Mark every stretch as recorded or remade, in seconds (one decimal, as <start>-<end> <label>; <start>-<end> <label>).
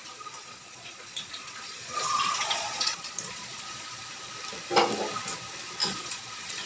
0.0-4.0 remade; 4.0-5.8 recorded; 5.8-6.7 remade